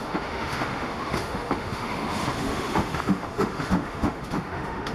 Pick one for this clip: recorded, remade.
remade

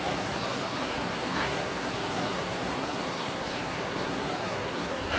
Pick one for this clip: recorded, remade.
remade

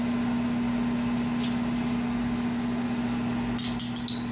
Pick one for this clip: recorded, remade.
recorded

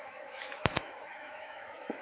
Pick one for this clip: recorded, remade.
remade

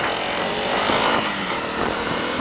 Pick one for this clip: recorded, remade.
remade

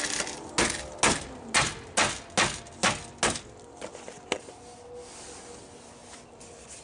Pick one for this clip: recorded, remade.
recorded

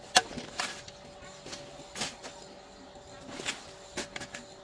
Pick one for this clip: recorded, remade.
recorded